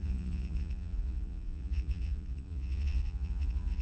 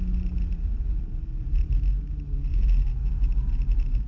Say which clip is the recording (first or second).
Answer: second